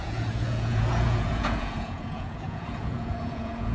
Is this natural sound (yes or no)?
no